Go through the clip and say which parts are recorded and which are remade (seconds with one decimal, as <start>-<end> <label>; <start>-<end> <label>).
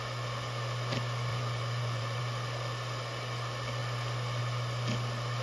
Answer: 0.0-1.3 recorded; 1.3-2.2 remade; 2.2-5.4 recorded